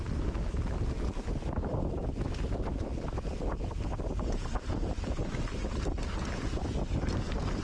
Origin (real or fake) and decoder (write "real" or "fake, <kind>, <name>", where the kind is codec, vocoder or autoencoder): real